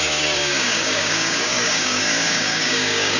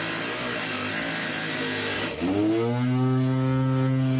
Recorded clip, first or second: second